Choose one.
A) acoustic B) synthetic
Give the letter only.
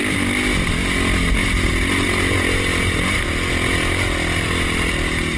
A